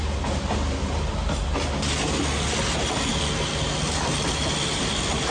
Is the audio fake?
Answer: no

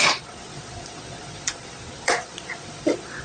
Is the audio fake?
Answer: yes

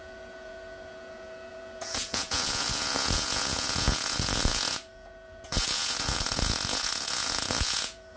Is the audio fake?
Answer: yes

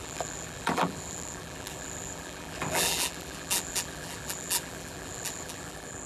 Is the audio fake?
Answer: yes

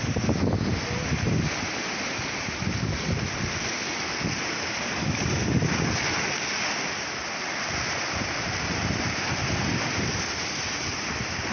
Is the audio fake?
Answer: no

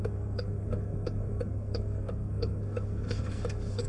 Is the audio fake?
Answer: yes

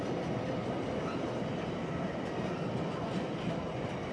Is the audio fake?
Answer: no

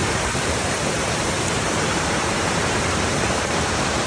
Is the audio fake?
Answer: yes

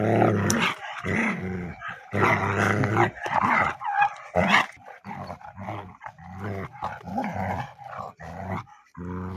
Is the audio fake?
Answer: no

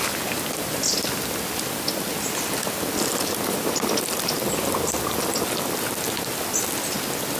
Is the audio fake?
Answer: no